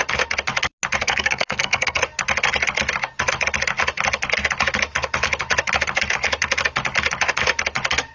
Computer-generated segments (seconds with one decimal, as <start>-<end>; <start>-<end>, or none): 1.0-2.0